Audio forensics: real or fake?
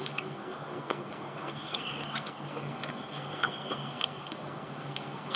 fake